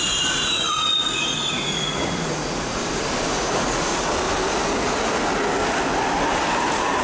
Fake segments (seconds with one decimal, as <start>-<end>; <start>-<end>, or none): 0.0-2.8; 3.3-3.9; 4.8-5.2; 6.6-7.0